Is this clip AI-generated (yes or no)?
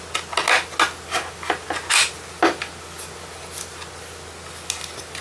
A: no